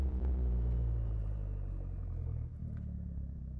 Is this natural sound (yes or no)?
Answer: no